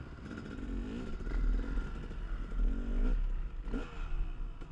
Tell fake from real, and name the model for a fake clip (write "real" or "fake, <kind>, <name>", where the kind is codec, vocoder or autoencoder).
real